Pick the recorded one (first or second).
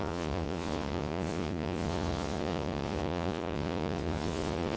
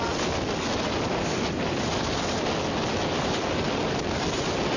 second